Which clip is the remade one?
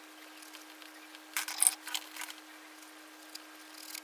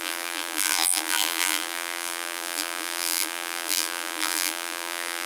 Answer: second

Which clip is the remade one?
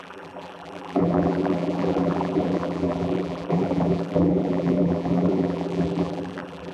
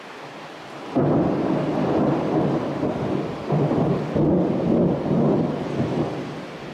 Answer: first